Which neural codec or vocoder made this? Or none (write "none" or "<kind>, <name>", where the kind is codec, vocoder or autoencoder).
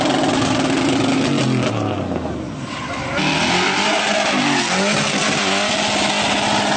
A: none